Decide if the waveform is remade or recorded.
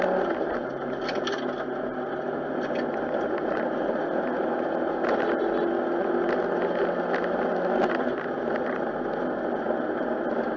recorded